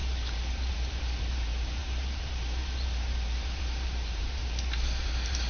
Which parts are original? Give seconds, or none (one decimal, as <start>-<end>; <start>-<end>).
none